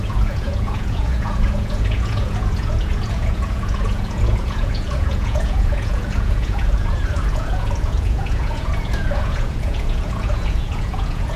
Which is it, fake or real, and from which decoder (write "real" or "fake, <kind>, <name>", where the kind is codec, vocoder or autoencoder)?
fake, vocoder, Vocos